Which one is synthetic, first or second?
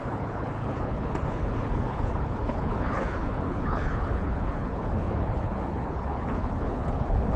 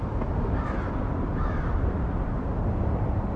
first